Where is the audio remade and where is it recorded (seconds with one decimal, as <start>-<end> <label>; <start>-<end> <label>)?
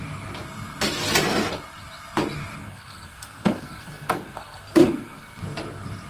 0.0-2.6 recorded; 2.6-5.4 remade; 5.4-6.1 recorded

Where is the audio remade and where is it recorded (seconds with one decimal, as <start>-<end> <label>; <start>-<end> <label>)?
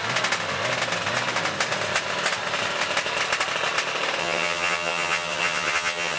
0.0-4.2 recorded; 4.2-6.2 remade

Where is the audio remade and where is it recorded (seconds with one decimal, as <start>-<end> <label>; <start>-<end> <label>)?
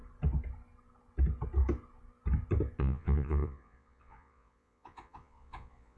0.0-2.8 recorded; 2.8-6.0 remade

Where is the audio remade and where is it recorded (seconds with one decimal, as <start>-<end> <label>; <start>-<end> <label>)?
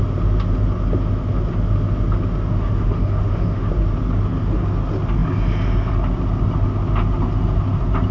0.0-2.5 recorded; 2.5-3.7 remade; 3.7-8.1 recorded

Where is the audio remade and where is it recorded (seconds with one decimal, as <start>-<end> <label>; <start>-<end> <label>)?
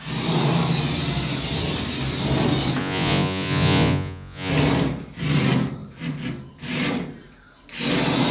0.0-2.8 recorded; 2.8-4.5 remade; 4.5-8.3 recorded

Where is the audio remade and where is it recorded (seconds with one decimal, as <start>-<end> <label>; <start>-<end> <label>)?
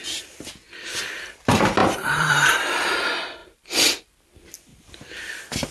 0.0-1.8 recorded; 1.8-2.3 remade; 2.3-3.4 recorded; 3.4-4.3 remade; 4.3-5.7 recorded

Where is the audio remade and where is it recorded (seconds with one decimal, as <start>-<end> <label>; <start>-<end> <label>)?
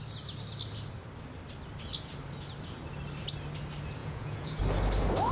0.0-4.0 recorded; 4.0-4.6 remade; 4.6-5.3 recorded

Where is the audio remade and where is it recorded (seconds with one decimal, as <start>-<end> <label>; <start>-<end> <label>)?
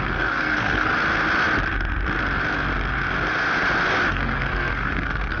0.0-0.9 remade; 0.9-4.1 recorded; 4.1-5.4 remade